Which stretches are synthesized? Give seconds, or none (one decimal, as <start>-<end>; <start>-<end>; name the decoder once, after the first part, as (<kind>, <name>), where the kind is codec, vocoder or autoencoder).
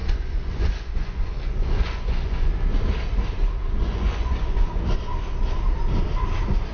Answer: 0.0-2.5 (vocoder, Vocos); 3.8-4.9